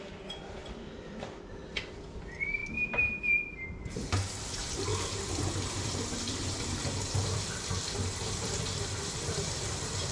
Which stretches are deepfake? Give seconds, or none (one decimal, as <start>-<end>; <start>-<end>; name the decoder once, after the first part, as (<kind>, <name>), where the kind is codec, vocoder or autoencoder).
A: 0.0-2.6 (vocoder, BigVGAN v2); 4.1-10.1